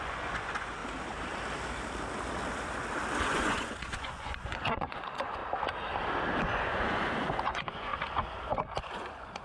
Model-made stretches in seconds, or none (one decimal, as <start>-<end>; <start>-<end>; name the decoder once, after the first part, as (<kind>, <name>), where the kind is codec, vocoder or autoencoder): 0.0-0.8 (vocoder, Vocos); 3.2-5.4; 6.5-7.9; 8.8-9.4